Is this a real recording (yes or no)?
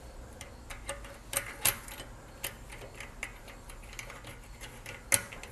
yes